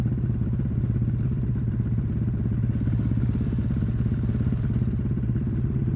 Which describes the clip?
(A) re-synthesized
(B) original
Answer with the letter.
B